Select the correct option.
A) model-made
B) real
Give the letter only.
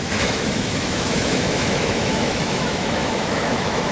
A